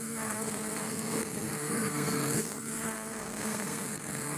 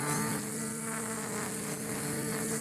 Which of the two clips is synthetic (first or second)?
first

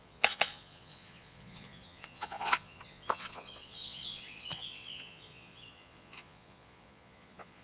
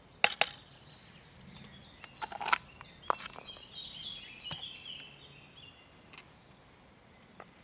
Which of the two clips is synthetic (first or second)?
first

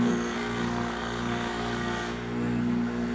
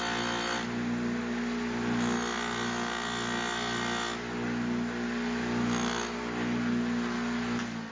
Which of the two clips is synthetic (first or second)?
first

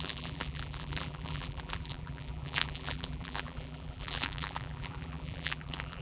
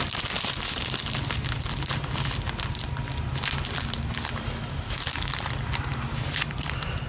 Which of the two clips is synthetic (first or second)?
first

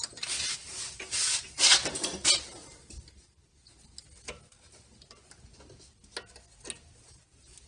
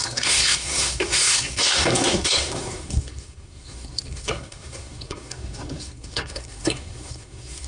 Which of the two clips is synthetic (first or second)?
second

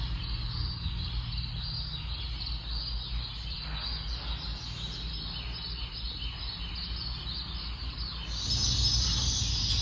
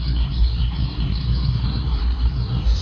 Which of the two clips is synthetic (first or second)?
second